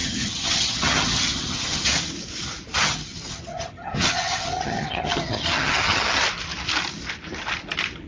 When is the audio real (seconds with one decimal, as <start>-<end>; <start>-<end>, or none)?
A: 2.0-2.7; 6.2-8.1